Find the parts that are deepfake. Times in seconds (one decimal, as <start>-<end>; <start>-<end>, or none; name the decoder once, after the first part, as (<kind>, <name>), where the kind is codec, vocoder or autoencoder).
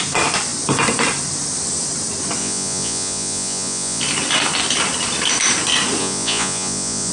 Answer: 2.4-4.0 (vocoder, Vocos); 6.0-7.1